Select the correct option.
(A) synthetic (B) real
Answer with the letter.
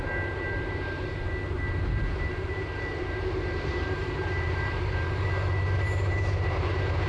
A